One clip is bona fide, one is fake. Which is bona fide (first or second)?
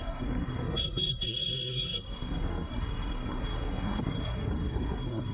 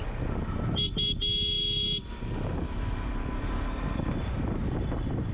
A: second